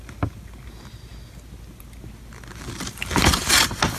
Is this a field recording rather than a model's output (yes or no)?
yes